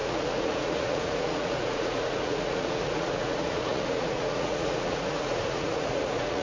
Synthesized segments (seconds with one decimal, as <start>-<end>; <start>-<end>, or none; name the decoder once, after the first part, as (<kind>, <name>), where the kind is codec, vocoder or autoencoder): 0.0-6.4 (vocoder, Vocos)

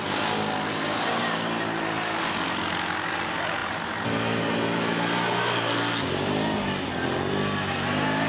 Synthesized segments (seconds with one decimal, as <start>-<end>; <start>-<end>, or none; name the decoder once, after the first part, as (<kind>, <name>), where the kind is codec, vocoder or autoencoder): none

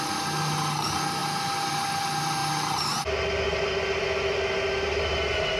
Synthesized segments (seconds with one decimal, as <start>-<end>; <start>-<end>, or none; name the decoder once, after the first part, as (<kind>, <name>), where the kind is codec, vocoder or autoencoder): none